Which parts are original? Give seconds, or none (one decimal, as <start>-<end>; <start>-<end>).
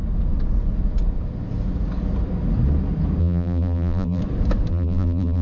0.0-3.2; 4.2-4.7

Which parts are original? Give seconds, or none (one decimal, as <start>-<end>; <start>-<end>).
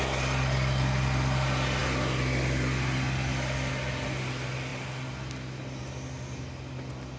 0.0-7.2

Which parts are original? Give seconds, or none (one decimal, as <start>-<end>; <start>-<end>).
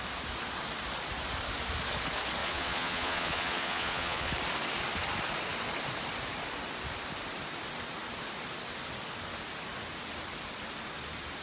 0.0-2.4; 4.3-11.4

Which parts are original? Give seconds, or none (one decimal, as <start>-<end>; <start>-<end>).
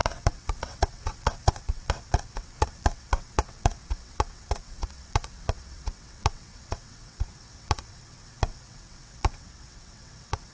none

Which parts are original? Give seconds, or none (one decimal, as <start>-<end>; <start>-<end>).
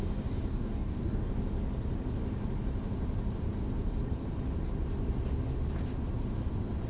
0.0-0.5; 1.3-6.9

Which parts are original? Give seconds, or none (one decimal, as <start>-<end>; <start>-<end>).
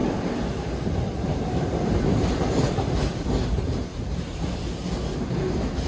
3.5-3.9; 4.7-5.9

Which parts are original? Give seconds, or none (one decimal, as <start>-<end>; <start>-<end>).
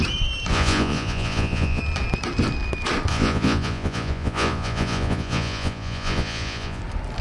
0.0-0.5; 1.8-3.1; 6.8-7.2